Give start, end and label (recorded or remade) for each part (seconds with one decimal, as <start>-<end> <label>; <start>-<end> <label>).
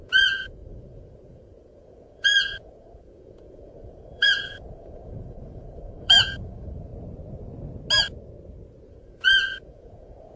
0.0-6.9 remade; 6.9-8.9 recorded; 8.9-10.4 remade